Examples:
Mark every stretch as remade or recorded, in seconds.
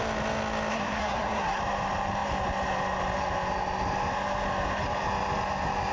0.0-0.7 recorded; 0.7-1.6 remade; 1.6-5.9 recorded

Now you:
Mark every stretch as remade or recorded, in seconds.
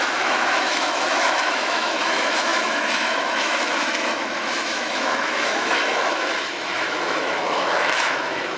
0.0-8.6 remade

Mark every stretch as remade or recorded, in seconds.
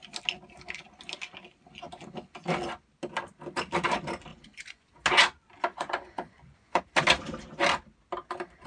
0.0-4.3 recorded; 4.3-4.9 remade; 4.9-5.7 recorded; 5.7-6.8 remade; 6.8-8.7 recorded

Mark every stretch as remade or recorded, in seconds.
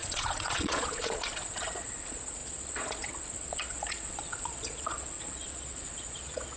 0.0-6.6 remade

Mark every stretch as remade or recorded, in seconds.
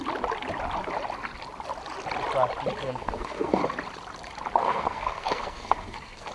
0.0-2.8 recorded; 2.8-3.6 remade; 3.6-4.6 recorded; 4.6-6.3 remade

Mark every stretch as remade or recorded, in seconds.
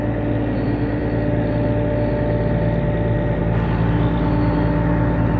0.0-5.4 recorded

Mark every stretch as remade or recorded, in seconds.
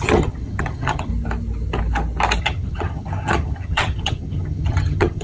0.0-1.1 remade; 1.1-2.4 recorded; 2.4-5.2 remade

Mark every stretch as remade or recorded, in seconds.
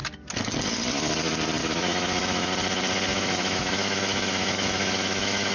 0.0-1.6 recorded; 1.6-2.5 remade; 2.5-3.1 recorded; 3.1-5.5 remade